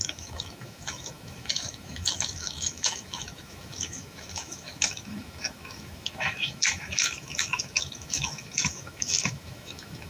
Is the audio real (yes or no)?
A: no